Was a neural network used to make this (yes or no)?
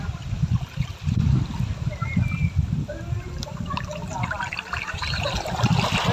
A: no